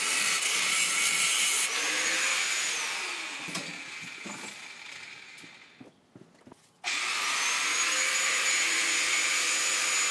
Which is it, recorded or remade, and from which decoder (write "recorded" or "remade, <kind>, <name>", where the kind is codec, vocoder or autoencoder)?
recorded